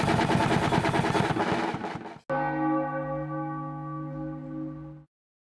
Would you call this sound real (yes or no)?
yes